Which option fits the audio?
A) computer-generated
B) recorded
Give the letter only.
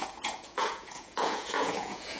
A